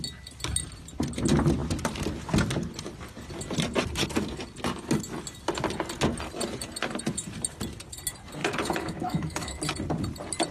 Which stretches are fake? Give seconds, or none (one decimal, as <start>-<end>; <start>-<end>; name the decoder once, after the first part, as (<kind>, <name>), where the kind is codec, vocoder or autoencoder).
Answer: 8.4-9.6 (autoencoder, DAC-VAE)

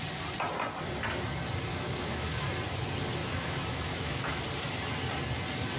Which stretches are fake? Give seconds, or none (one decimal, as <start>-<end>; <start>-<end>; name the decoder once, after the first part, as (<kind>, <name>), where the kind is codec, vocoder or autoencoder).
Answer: 1.7-2.5 (autoencoder, DAC-VAE); 3.2-4.4